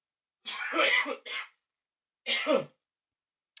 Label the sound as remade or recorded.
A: recorded